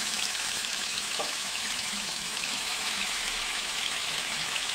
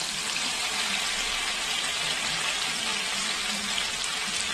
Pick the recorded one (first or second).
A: second